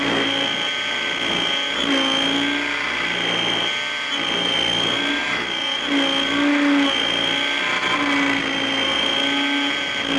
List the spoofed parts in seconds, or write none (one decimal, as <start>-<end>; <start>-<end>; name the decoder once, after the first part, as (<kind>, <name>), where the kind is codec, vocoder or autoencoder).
none